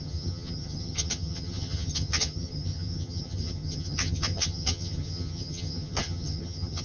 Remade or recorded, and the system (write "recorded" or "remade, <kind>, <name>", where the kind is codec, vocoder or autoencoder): remade, vocoder, HiFi-GAN